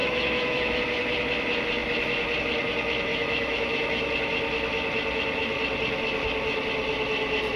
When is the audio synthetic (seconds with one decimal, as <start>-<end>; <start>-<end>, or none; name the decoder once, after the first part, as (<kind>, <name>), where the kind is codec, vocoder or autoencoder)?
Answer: 0.0-0.8 (autoencoder, DAC-VAE); 3.1-4.1